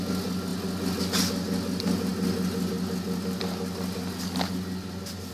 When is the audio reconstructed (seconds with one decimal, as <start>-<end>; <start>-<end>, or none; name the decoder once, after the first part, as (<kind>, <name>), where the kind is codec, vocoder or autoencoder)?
none